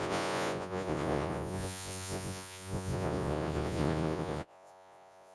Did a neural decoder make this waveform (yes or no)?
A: yes